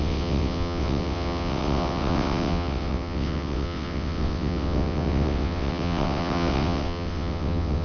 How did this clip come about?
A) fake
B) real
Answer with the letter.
A